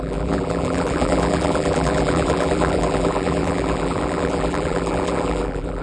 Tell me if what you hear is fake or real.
fake